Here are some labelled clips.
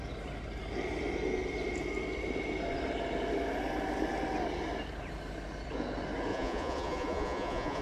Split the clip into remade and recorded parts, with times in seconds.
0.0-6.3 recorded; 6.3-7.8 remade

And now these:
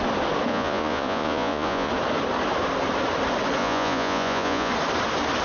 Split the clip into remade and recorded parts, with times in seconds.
0.0-0.5 recorded; 0.5-1.9 remade; 1.9-3.6 recorded; 3.6-4.7 remade; 4.7-5.4 recorded

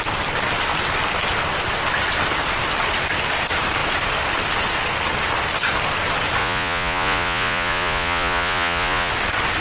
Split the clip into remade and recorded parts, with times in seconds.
0.0-6.4 recorded; 6.4-9.1 remade; 9.1-9.6 recorded